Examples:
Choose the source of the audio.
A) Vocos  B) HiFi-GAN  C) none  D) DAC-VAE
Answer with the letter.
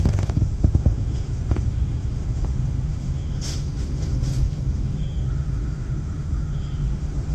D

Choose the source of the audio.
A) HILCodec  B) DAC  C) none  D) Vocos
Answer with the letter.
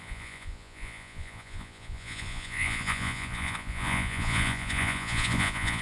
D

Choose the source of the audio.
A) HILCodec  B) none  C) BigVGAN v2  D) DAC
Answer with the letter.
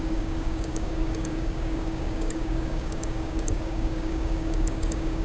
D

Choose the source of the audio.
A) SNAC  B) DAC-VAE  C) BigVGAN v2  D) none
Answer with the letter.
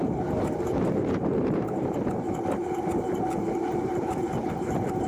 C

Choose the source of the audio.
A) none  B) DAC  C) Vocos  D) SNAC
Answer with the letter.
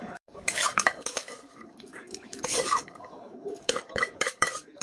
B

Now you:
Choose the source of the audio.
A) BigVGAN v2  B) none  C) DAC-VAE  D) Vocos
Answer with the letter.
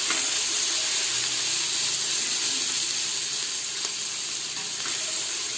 B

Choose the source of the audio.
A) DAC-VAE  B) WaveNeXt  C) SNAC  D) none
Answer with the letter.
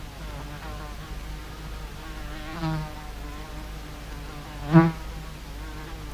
D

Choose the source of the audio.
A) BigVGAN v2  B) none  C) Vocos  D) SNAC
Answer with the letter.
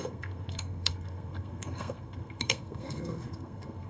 D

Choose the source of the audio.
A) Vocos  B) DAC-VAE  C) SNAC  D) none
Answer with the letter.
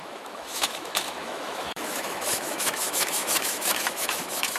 B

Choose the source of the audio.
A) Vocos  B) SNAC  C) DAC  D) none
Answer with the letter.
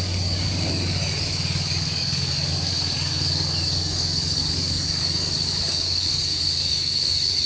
C